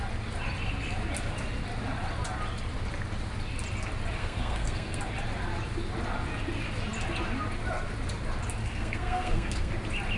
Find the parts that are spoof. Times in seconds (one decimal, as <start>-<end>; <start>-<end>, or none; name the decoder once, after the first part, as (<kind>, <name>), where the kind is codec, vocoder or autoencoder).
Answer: 4.2-5.0 (codec, SNAC); 8.6-9.7

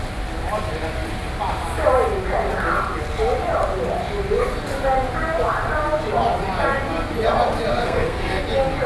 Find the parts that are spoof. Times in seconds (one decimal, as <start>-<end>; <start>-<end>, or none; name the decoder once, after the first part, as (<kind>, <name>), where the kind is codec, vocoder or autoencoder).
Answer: 7.7-8.4 (codec, SNAC)

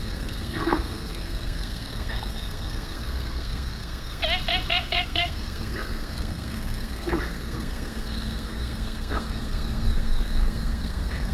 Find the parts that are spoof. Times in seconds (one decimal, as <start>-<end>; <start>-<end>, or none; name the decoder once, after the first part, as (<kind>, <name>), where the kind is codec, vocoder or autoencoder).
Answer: 0.0-4.2 (codec, SNAC); 4.7-11.3

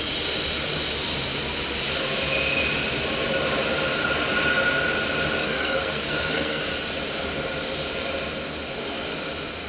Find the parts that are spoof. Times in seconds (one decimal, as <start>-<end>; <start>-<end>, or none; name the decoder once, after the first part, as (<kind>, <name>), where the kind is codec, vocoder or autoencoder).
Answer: 5.4-6.6 (codec, SNAC)